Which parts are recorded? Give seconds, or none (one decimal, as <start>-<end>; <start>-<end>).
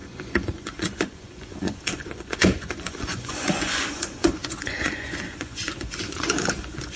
none